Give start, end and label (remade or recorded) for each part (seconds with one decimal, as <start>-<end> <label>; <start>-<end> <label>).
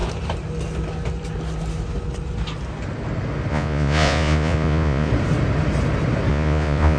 0.0-3.5 recorded; 3.5-5.1 remade; 5.1-6.3 recorded; 6.3-7.0 remade